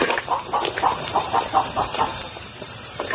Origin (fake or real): fake